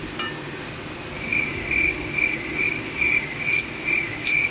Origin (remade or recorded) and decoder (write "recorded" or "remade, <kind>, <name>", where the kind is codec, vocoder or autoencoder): recorded